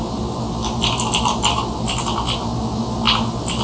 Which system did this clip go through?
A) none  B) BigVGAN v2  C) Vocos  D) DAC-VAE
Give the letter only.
A